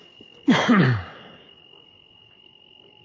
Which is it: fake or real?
fake